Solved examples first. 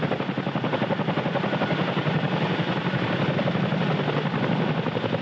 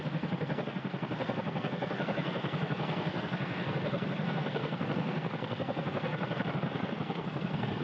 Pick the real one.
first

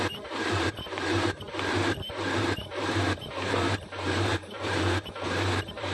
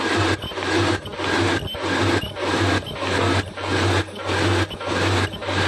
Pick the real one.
second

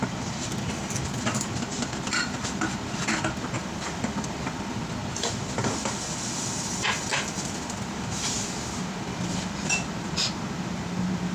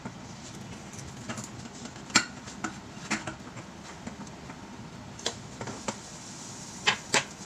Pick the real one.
second